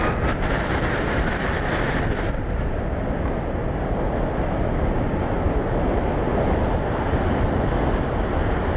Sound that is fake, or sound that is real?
real